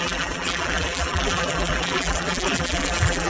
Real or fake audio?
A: fake